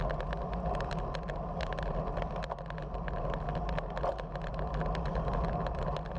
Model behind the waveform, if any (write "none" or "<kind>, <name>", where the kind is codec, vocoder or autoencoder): none